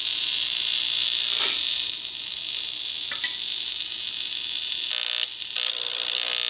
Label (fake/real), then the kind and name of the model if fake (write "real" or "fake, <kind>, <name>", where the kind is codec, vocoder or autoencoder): real